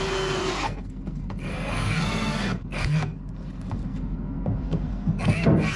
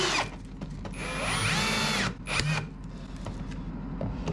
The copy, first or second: first